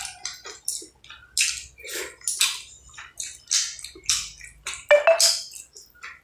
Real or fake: real